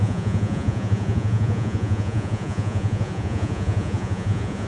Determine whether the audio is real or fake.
fake